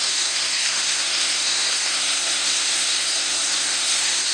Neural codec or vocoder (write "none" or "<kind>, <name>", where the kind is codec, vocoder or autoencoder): codec, SNAC